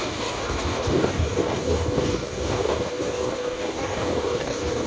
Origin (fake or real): fake